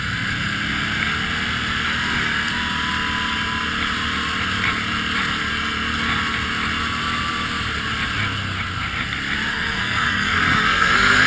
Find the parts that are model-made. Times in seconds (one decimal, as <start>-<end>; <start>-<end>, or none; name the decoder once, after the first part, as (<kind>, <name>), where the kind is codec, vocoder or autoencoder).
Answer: 9.5-11.3 (codec, SNAC)